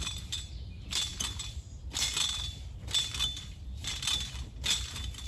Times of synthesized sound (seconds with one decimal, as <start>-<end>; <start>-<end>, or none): none